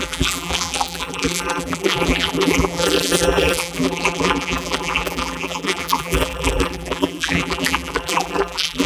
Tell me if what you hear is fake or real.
fake